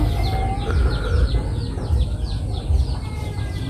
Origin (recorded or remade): recorded